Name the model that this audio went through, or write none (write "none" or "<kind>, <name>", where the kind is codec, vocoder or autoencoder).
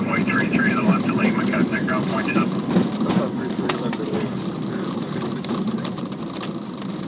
vocoder, BigVGAN v2